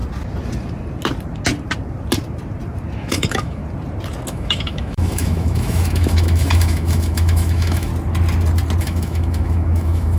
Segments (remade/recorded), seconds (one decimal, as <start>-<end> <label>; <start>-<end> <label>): 0.0-3.0 recorded; 3.0-3.6 remade; 3.6-4.3 recorded; 4.3-7.9 remade; 7.9-8.8 recorded; 8.8-10.2 remade